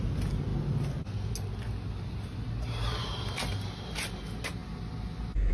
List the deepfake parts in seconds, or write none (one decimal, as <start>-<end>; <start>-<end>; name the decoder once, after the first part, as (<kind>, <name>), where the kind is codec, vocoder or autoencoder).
none